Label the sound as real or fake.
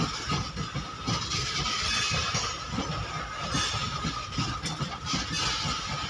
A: real